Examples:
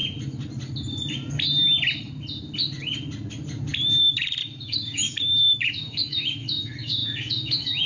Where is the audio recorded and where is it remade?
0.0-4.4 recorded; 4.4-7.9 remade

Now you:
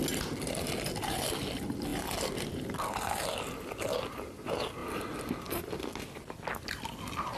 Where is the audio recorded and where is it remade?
0.0-7.4 recorded

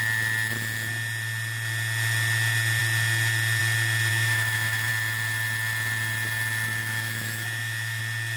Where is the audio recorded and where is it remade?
0.0-4.1 recorded; 4.1-4.9 remade; 4.9-6.8 recorded; 6.8-8.0 remade; 8.0-8.4 recorded

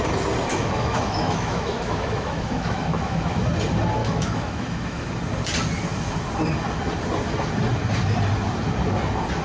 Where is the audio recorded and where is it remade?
0.0-0.5 recorded; 0.5-3.4 remade; 3.4-4.0 recorded; 4.0-5.1 remade; 5.1-9.4 recorded

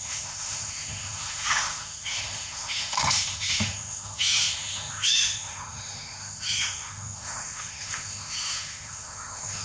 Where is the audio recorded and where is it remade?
0.0-9.6 remade